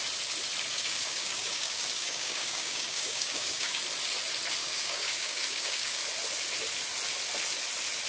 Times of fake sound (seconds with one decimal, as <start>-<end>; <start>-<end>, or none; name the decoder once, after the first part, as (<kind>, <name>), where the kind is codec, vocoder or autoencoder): 0.7-3.8 (codec, DAC); 4.6-6.0